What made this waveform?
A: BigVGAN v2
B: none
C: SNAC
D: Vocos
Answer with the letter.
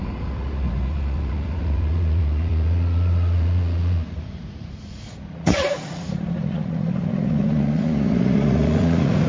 D